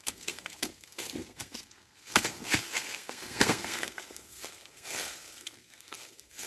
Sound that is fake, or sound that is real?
fake